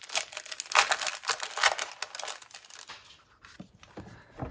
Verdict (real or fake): real